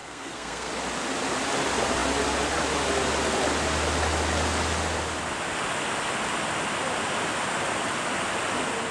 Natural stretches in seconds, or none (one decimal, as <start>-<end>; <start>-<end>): 0.7-8.9